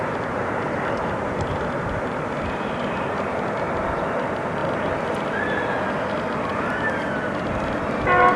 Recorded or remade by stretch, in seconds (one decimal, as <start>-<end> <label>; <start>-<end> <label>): 0.0-8.4 recorded

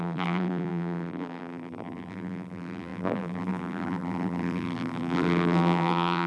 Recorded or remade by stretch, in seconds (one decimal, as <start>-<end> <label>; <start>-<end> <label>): 0.0-6.3 remade